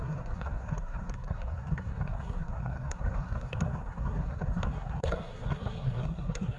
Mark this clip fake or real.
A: fake